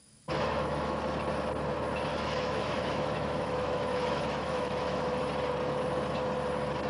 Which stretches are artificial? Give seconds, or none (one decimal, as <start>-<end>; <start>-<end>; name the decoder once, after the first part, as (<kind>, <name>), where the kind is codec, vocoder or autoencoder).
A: 0.0-1.0 (autoencoder, DAC-VAE); 2.1-5.2